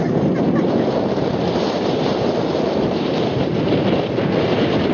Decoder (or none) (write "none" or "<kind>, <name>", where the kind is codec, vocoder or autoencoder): vocoder, BigVGAN v2